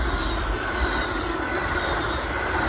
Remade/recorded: recorded